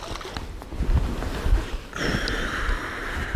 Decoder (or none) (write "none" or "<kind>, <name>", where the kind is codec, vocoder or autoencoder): vocoder, BigVGAN v2